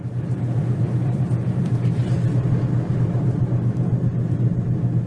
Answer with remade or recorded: remade